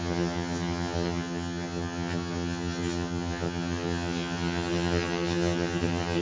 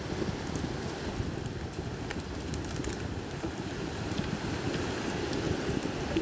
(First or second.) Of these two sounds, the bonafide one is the second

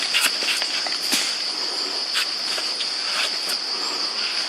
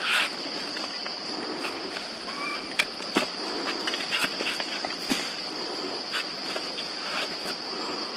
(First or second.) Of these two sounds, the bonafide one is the first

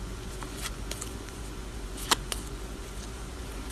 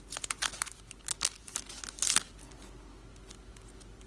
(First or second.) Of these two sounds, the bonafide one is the second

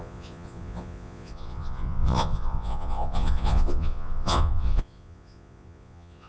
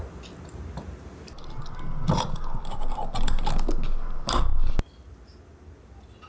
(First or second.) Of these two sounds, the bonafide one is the second